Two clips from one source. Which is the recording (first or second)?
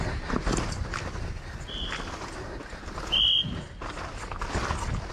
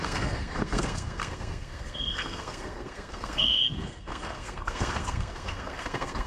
first